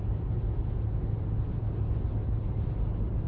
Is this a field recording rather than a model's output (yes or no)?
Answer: yes